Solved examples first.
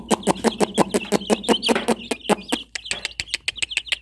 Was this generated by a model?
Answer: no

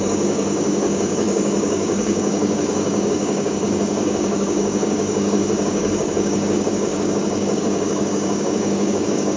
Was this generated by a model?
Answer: yes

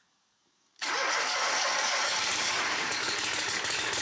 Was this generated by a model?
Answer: yes